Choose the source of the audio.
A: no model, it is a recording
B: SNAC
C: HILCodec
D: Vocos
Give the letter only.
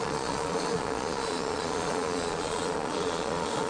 D